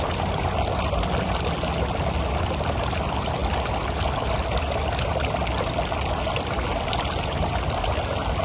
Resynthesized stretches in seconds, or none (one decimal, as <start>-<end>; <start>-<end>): none

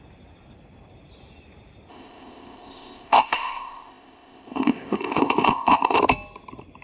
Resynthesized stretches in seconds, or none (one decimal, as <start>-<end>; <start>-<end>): 1.9-6.0

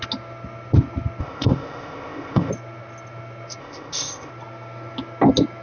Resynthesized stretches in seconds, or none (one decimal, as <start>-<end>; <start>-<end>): 1.2-2.5; 3.6-4.3

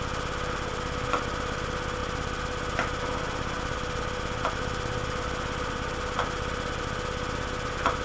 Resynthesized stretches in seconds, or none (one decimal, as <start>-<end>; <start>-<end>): none

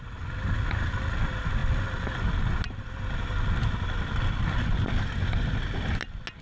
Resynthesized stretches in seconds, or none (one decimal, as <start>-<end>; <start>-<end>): none